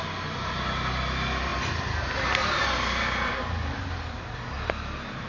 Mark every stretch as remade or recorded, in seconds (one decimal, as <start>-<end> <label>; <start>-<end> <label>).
0.0-5.3 recorded

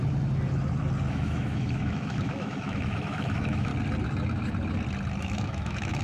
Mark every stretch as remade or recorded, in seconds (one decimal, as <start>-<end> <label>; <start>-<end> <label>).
0.0-1.1 recorded; 1.1-3.7 remade; 3.7-5.2 recorded; 5.2-6.0 remade

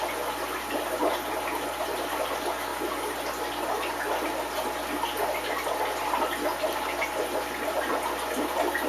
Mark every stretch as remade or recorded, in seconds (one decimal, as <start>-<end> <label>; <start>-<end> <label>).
0.0-8.9 recorded

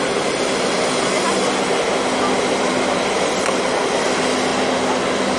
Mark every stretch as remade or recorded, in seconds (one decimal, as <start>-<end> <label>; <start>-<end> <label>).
0.0-5.4 recorded

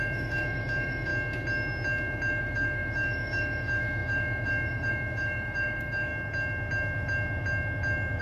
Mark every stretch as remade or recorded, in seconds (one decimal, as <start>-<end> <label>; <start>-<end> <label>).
0.0-1.1 remade; 1.1-2.4 recorded; 2.4-6.1 remade; 6.1-8.2 recorded

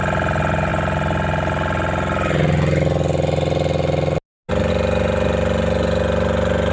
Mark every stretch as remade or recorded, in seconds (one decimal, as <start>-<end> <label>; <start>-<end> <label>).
0.0-6.7 recorded

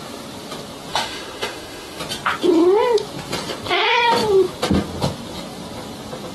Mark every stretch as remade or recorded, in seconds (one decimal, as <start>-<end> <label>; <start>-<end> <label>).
0.0-0.9 recorded; 0.9-2.0 remade; 2.0-6.3 recorded